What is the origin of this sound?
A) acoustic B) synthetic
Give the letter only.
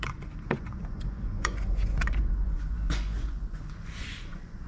B